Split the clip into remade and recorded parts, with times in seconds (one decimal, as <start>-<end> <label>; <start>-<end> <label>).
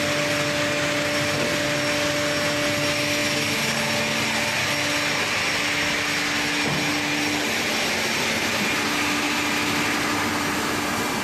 0.0-11.2 recorded